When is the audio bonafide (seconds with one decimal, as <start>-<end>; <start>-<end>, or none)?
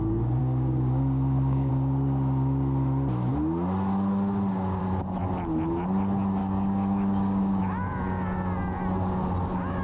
0.0-0.4; 1.7-6.4; 7.6-9.8